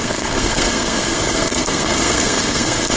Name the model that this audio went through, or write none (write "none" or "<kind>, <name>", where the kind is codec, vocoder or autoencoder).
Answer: codec, SNAC